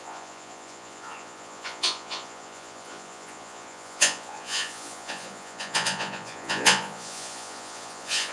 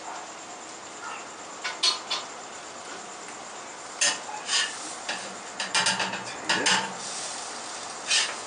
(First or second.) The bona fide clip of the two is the second